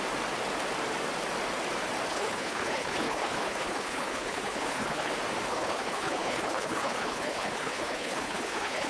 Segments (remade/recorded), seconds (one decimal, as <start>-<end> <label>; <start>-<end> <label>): 0.0-2.1 recorded; 2.1-5.1 remade; 5.1-5.5 recorded; 5.5-8.9 remade